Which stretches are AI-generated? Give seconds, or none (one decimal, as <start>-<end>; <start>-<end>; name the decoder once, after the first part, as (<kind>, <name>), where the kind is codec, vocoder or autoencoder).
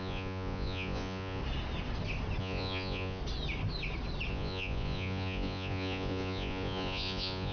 0.0-1.4 (vocoder, Vocos); 2.4-3.2; 4.3-7.5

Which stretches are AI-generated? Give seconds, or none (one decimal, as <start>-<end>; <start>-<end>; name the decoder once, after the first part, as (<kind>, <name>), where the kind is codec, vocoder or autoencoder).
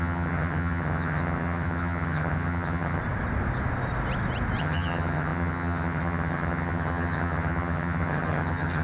0.0-3.0 (vocoder, HiFi-GAN); 4.6-8.8